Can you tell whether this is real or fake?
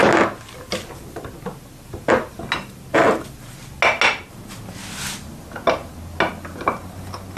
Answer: real